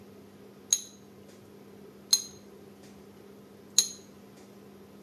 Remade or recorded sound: recorded